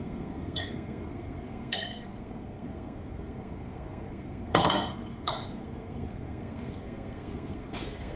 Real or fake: fake